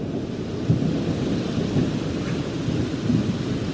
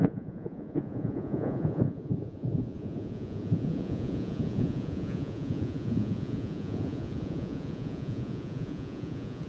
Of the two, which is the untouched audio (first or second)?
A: first